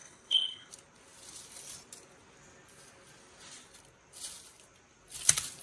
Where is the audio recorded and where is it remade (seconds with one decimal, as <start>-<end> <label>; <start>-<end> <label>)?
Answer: 0.0-0.7 remade; 0.7-5.6 recorded